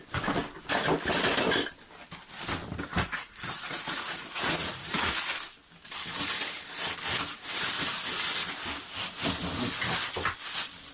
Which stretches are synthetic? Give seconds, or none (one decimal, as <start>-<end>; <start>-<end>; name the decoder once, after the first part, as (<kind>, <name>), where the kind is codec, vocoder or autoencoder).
2.9-5.3 (vocoder, Vocos)